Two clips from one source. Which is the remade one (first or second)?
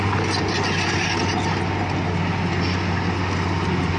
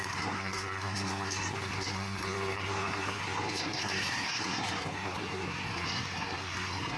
second